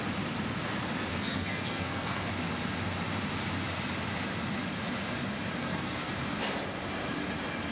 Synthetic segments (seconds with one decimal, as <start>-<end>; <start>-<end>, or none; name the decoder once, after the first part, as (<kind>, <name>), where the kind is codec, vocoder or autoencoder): 1.1-2.3 (codec, SNAC); 5.6-6.1